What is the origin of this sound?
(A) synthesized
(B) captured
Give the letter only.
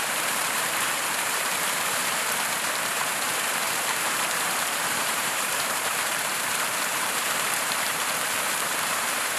A